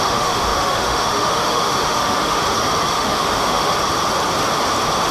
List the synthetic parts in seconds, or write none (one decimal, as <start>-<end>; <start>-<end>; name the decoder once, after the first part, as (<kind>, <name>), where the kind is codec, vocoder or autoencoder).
0.0-2.4 (autoencoder, DAC-VAE); 2.9-3.7